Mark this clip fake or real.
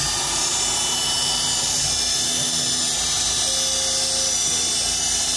real